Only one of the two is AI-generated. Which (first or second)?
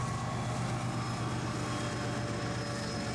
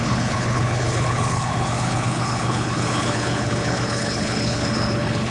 second